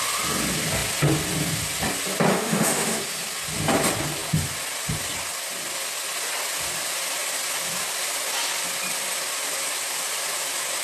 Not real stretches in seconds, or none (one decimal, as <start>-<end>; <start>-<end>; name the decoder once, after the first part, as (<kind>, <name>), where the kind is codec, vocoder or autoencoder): 2.3-3.0 (autoencoder, DAC-VAE)